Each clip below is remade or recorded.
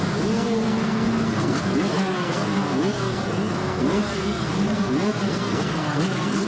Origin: remade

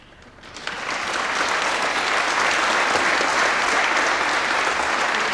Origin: recorded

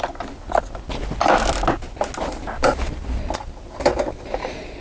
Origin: recorded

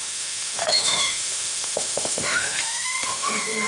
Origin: remade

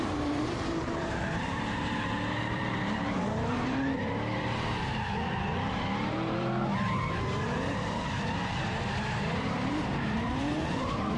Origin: remade